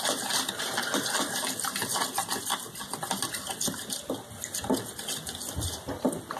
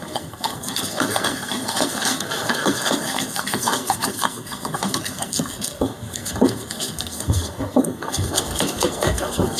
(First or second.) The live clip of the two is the first